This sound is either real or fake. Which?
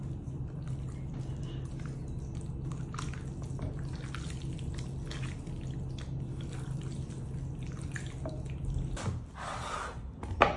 real